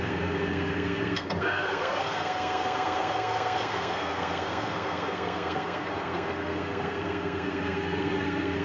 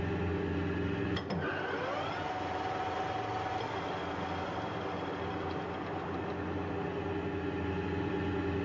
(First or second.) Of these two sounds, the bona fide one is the second